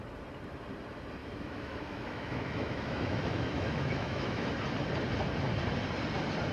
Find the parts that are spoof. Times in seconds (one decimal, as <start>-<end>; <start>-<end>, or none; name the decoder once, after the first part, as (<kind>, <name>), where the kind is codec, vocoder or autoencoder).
1.2-4.5 (autoencoder, DAC-VAE)